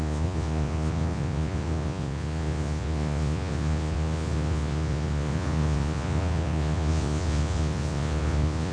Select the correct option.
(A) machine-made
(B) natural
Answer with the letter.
A